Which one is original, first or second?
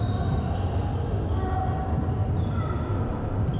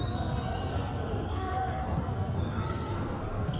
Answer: first